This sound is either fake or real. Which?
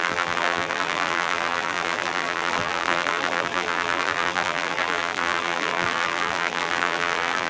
fake